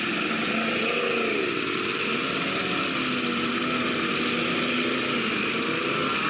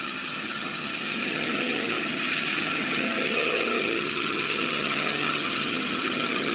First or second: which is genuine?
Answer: first